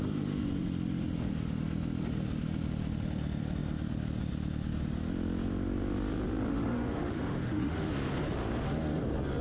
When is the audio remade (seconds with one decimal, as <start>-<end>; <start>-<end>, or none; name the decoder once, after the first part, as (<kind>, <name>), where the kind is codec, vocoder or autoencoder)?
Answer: 6.5-7.9 (autoencoder, DAC-VAE)